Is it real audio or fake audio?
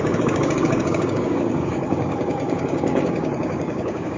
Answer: fake